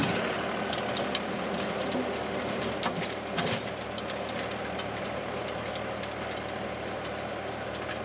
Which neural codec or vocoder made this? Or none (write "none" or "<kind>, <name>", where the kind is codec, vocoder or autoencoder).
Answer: none